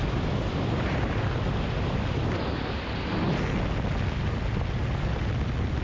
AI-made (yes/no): no